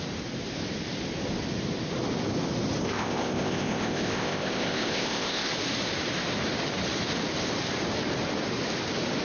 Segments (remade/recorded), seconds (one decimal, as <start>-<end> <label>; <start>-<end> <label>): 0.0-2.8 recorded; 2.8-5.5 remade; 5.5-9.2 recorded